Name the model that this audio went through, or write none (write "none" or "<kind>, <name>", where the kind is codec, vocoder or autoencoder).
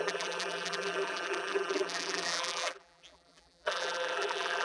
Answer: vocoder, BigVGAN v2